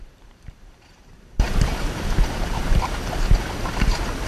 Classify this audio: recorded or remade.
remade